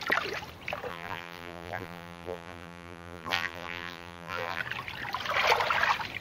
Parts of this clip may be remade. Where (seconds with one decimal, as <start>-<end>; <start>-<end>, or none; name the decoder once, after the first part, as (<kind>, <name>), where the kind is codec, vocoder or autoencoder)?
0.9-4.6 (vocoder, BigVGAN v2)